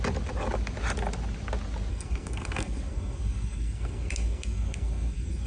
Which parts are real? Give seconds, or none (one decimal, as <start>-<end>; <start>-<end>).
0.0-1.9